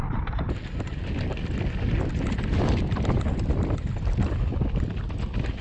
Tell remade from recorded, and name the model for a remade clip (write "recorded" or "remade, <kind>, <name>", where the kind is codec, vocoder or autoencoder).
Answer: recorded